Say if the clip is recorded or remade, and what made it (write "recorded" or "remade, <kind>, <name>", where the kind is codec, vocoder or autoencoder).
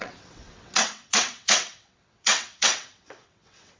remade, vocoder, WaveNeXt